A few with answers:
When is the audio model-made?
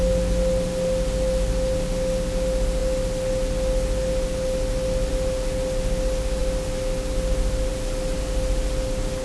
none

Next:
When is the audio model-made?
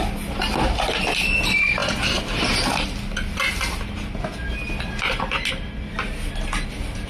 none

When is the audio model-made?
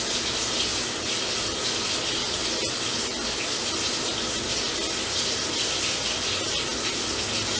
none